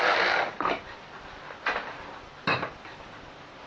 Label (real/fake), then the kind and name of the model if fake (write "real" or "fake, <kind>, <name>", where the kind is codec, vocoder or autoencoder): real